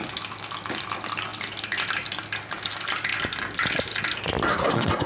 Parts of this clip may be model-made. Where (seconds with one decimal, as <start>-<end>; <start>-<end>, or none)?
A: 4.5-5.1

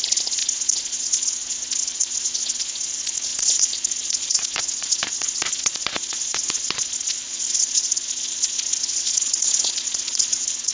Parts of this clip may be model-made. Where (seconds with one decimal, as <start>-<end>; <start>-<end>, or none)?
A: 0.0-10.7

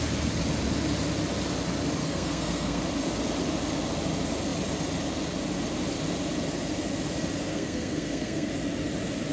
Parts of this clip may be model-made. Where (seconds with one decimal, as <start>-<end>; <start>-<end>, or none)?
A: 2.0-2.8; 7.5-8.5